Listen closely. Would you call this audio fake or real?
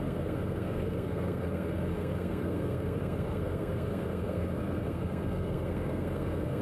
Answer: fake